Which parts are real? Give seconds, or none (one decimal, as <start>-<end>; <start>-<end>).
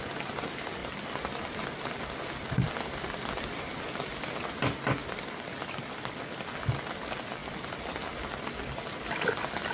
0.0-0.8; 4.3-5.0; 6.2-7.4; 7.9-9.7